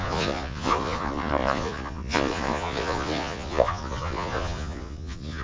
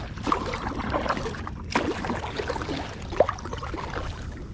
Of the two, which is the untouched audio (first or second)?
second